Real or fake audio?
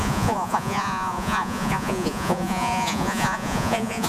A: fake